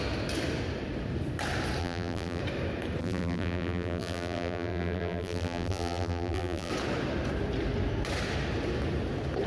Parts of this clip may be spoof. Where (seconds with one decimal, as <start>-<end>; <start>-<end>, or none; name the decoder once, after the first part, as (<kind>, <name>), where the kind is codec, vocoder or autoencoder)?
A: 1.8-2.4 (vocoder, BigVGAN v2); 3.0-6.7